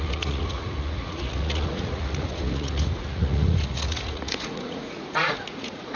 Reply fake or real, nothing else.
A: fake